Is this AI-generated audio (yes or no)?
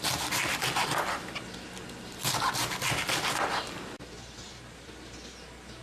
no